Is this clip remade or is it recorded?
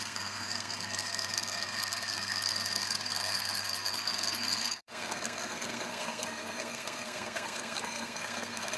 remade